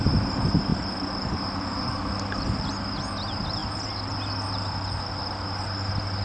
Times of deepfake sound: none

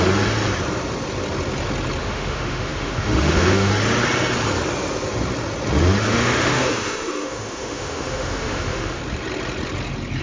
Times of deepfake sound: 2.0-3.7 (autoencoder, DAC-VAE); 6.1-9.0

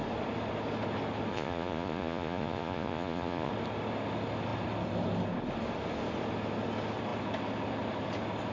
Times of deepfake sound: 1.3-3.5 (vocoder, Vocos)

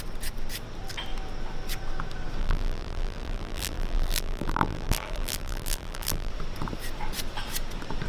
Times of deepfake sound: 2.4-6.3 (vocoder, BigVGAN v2)

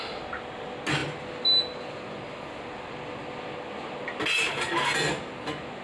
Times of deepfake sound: none

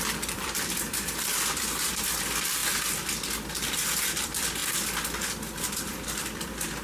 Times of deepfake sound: 0.0-2.6 (vocoder, BigVGAN v2); 3.5-4.6; 5.6-6.8